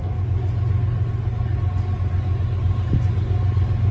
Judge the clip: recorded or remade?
recorded